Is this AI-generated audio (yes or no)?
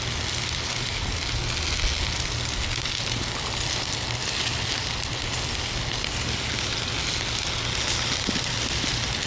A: no